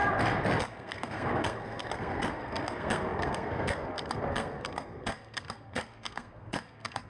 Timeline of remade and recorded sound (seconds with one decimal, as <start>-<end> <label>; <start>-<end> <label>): 0.0-0.6 recorded; 0.6-7.1 remade